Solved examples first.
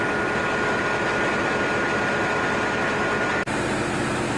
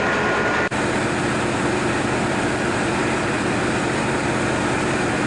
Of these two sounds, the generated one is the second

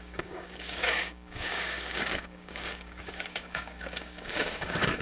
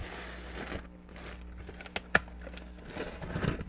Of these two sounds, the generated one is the first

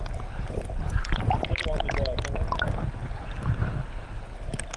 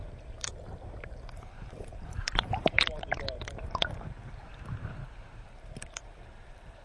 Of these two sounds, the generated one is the second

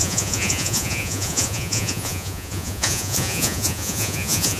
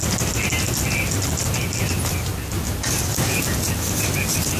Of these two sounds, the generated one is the first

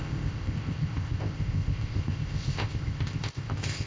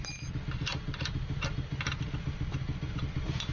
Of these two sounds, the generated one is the first